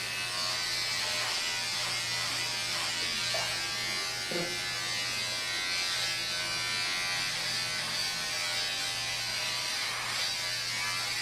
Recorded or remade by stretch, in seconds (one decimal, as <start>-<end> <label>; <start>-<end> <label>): 0.0-9.3 recorded; 9.3-10.2 remade; 10.2-11.2 recorded